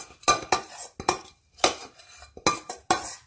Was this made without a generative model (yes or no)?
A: yes